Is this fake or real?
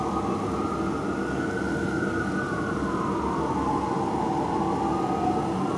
real